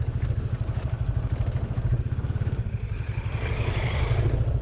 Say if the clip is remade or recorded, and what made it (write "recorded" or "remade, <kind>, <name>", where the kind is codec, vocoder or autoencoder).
recorded